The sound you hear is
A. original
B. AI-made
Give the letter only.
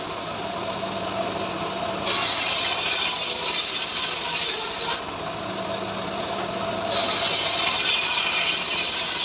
A